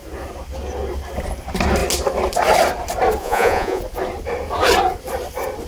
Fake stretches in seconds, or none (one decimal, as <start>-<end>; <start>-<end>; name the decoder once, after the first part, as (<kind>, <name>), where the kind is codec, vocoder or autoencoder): 3.2-3.8 (vocoder, Vocos)